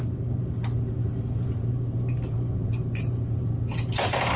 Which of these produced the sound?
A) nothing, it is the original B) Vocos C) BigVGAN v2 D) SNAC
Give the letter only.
C